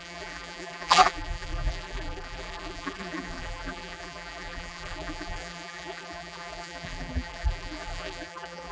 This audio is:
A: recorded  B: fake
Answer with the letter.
B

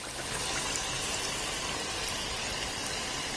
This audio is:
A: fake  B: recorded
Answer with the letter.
B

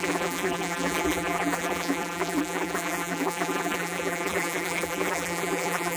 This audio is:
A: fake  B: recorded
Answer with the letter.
A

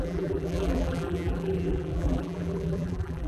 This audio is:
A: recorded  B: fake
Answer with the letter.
B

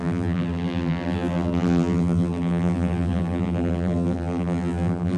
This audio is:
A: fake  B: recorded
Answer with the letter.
A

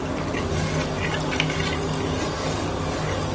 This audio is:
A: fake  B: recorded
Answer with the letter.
B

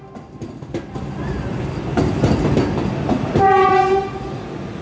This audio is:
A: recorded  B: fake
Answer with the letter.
A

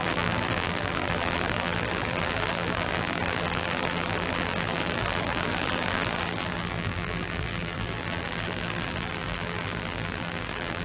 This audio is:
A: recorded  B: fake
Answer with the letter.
B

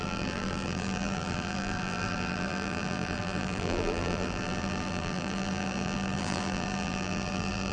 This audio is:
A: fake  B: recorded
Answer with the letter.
A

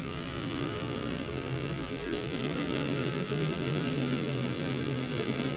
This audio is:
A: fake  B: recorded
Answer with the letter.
A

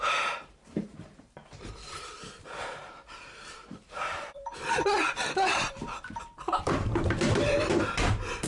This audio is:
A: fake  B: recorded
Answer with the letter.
A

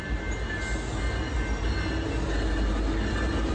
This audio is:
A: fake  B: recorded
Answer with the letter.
B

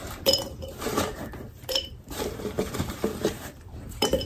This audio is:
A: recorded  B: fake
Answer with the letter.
B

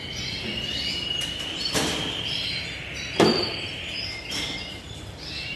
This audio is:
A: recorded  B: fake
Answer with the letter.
B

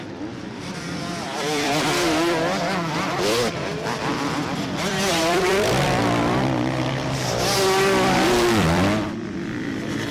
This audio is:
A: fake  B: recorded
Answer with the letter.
A